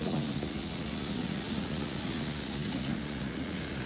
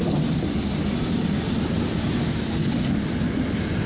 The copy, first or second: first